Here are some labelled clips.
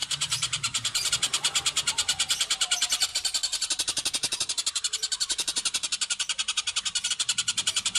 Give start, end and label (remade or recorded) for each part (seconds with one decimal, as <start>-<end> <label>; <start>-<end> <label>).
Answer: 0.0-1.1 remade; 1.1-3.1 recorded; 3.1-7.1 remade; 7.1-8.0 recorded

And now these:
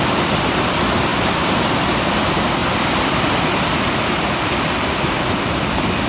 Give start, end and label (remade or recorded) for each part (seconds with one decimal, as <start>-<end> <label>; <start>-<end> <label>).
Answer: 0.0-6.1 remade

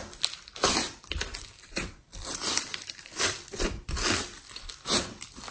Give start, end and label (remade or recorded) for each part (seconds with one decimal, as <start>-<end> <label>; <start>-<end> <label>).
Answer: 0.0-0.6 recorded; 0.6-1.4 remade; 1.4-2.1 recorded; 2.1-5.5 remade

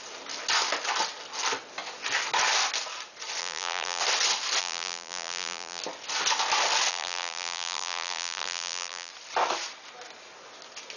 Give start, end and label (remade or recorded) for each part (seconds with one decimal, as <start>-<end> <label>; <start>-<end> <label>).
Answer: 0.0-3.4 recorded; 3.4-4.0 remade; 4.0-4.6 recorded; 4.6-5.8 remade; 5.8-6.9 recorded; 6.9-9.1 remade; 9.1-11.0 recorded

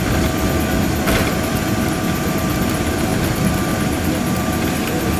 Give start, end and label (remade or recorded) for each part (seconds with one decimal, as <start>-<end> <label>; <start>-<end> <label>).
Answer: 0.0-3.1 remade; 3.1-4.1 recorded; 4.1-5.2 remade

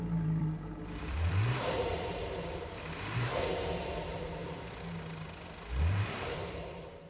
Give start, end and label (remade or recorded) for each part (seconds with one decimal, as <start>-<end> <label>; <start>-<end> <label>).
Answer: 0.0-4.4 remade; 4.4-5.8 recorded; 5.8-7.1 remade

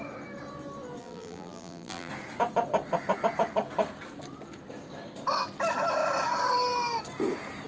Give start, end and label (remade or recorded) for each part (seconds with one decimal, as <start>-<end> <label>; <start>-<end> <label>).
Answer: 0.0-1.0 recorded; 1.0-2.1 remade; 2.1-7.7 recorded

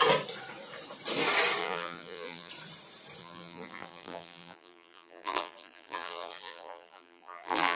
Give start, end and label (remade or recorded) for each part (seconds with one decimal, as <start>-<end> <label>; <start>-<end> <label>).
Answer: 0.0-1.6 recorded; 1.6-2.5 remade; 2.5-3.2 recorded; 3.2-7.8 remade